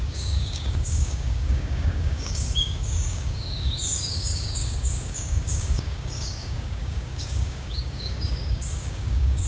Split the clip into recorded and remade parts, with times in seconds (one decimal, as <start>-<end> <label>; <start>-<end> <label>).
0.0-9.5 remade